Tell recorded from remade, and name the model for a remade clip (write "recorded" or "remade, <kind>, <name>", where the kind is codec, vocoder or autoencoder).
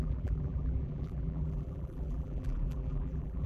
remade, vocoder, BigVGAN v2